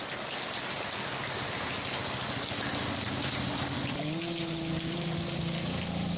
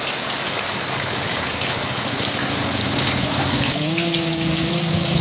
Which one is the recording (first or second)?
first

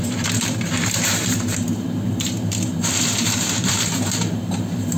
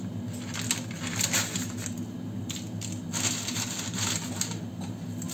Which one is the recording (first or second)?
second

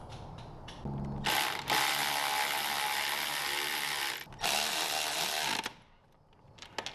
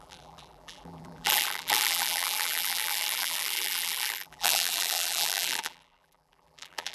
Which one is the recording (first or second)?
first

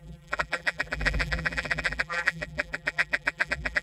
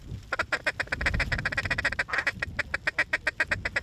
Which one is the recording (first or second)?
second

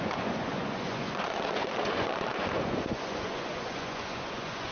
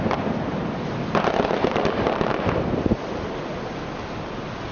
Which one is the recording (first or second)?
second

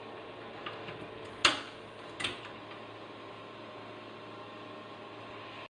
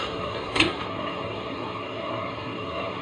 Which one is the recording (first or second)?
first